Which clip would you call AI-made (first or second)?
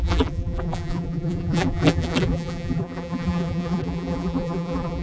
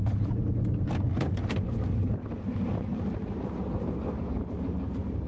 first